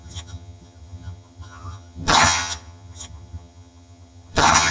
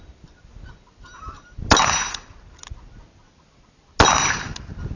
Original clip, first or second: second